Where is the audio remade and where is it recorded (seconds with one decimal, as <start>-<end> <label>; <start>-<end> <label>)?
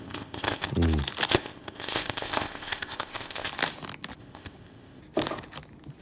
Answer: 0.0-0.7 remade; 0.7-1.3 recorded; 1.3-3.5 remade; 3.5-4.2 recorded; 4.2-5.0 remade; 5.0-6.0 recorded